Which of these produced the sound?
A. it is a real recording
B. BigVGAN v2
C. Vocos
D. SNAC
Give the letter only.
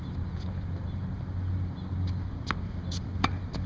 A